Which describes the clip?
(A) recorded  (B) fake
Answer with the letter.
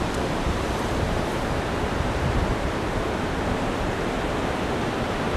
B